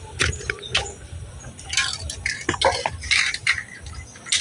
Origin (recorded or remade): recorded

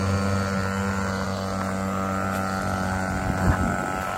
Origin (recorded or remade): recorded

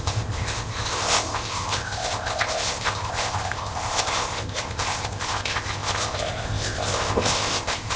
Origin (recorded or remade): remade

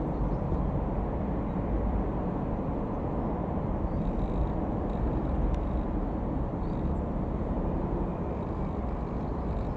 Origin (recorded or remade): remade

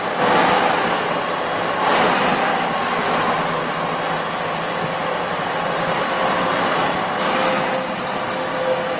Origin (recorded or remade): recorded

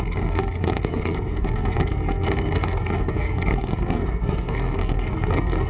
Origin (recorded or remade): remade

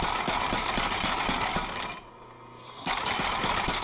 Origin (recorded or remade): recorded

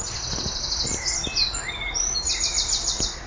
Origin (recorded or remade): recorded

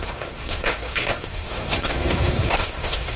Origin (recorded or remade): remade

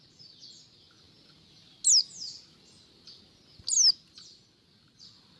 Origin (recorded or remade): recorded